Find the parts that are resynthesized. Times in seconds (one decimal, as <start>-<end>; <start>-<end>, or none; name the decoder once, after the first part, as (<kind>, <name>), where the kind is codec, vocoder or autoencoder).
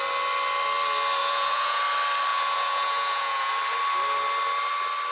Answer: 1.2-1.8 (vocoder, Vocos); 2.3-3.5